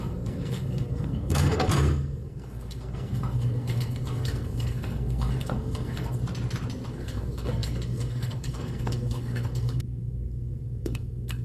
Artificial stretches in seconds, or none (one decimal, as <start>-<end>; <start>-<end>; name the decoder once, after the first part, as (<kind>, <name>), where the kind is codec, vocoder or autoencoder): 0.0-6.2 (codec, SNAC); 6.9-11.4